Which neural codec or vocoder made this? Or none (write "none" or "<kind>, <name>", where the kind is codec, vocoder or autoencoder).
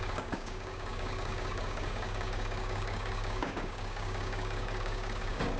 codec, DAC